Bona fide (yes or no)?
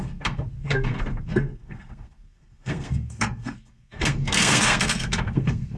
no